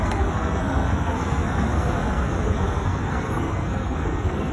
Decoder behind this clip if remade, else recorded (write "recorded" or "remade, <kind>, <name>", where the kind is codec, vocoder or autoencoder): remade, codec, SNAC